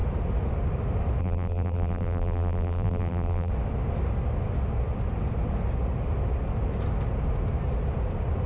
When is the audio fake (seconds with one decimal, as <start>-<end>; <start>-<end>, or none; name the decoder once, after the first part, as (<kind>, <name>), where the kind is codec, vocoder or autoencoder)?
1.2-3.5 (vocoder, BigVGAN v2)